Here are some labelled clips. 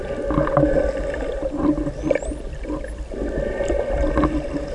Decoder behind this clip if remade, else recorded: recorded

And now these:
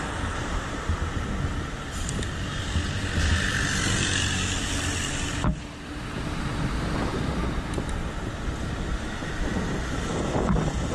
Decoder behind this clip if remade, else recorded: recorded